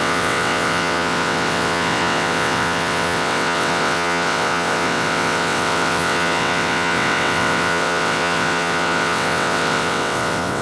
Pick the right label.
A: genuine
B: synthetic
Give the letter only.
B